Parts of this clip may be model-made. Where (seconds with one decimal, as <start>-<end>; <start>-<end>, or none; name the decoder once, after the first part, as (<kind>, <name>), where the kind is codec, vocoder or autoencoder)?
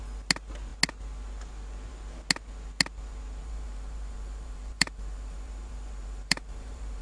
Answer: 3.4-7.0 (vocoder, BigVGAN v2)